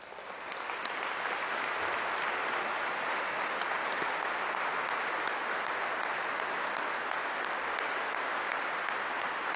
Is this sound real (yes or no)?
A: yes